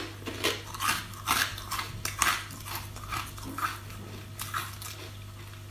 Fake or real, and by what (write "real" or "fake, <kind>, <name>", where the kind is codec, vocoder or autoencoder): real